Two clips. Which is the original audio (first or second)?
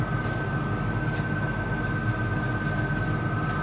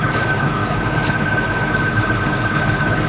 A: first